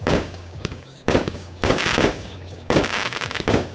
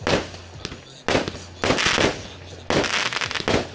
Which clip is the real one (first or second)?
second